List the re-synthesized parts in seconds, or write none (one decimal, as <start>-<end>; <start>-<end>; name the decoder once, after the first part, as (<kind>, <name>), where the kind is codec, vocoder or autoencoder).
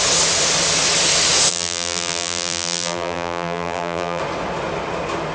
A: 1.5-4.2 (vocoder, BigVGAN v2)